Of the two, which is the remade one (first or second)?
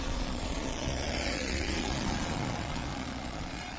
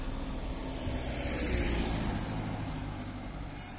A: first